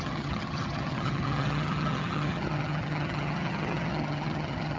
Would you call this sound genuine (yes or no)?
no